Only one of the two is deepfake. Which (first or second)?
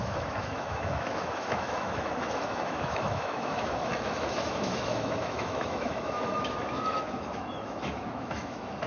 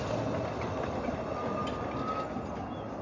first